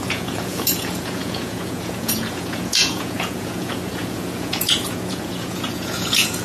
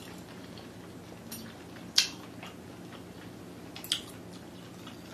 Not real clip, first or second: first